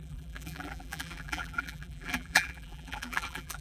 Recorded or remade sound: remade